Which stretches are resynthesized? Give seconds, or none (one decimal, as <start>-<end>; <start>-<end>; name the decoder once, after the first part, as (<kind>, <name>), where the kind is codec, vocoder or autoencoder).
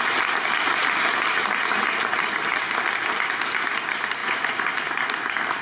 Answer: 4.2-4.7 (vocoder, Vocos)